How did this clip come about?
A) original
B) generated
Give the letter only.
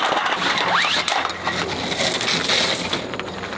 A